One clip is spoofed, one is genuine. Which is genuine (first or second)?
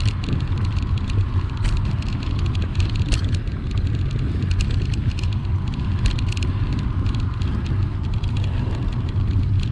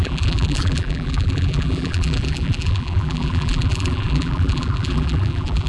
first